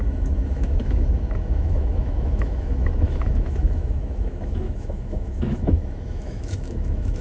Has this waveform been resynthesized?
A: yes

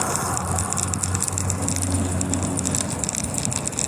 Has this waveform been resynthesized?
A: no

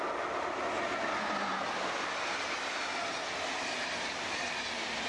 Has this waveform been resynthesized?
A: no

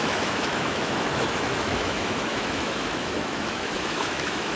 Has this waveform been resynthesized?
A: yes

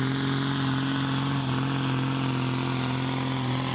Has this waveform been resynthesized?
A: no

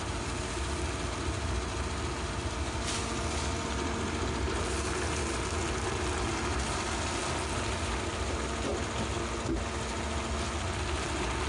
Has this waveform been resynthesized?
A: no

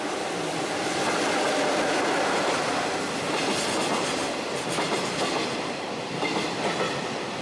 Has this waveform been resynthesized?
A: no